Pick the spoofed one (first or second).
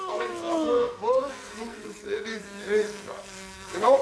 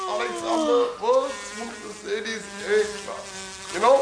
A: first